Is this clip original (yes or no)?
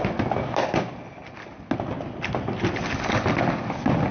yes